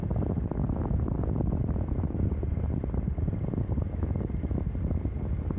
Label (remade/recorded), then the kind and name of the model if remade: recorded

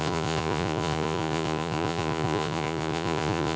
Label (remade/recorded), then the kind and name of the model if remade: remade, vocoder, Vocos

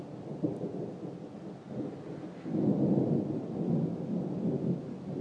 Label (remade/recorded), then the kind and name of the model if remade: recorded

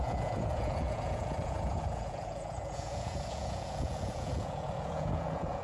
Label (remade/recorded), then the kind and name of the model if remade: remade, vocoder, Vocos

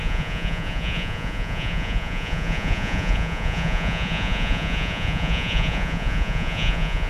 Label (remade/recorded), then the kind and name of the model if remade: remade, vocoder, Vocos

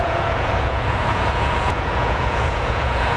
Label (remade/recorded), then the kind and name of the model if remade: remade, vocoder, Vocos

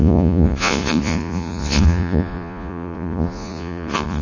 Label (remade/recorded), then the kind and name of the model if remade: remade, vocoder, Vocos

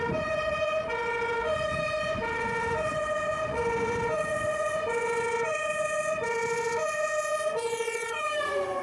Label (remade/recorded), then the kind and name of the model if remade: remade, vocoder, Vocos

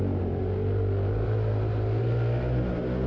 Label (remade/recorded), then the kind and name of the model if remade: recorded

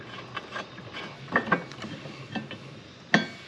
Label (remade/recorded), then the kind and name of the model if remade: recorded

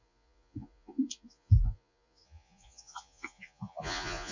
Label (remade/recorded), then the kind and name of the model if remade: remade, vocoder, Vocos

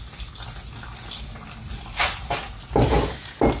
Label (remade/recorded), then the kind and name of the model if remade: recorded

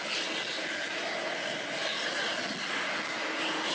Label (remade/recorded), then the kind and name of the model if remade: recorded